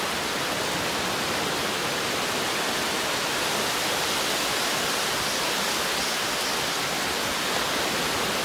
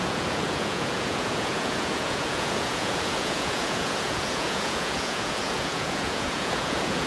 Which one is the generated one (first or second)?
second